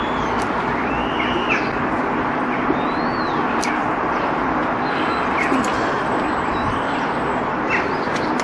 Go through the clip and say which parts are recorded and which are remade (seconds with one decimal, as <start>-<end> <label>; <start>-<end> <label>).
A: 0.0-8.4 recorded